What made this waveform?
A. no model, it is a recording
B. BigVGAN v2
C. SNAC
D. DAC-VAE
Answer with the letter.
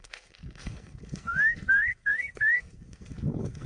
C